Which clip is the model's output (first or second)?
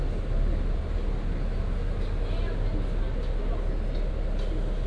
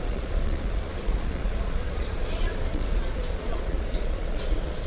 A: second